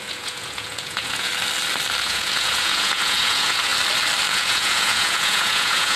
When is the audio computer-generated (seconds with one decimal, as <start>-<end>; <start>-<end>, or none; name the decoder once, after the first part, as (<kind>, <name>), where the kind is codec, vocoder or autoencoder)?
0.0-1.3 (vocoder, Vocos); 2.0-3.7; 4.3-6.0